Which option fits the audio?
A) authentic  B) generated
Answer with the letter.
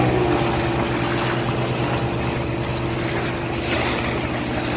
A